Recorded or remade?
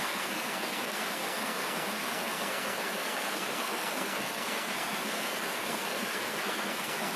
remade